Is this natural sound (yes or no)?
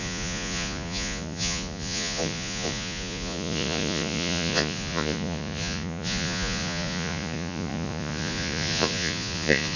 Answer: no